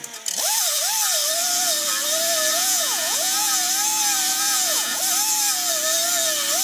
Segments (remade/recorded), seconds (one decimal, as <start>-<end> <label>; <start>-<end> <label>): 0.0-2.5 recorded; 2.5-3.6 remade; 3.6-4.3 recorded; 4.3-5.0 remade; 5.0-6.6 recorded